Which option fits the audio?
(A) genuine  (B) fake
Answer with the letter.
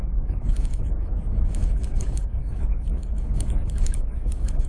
B